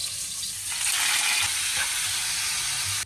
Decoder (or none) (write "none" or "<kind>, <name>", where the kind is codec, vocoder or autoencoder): none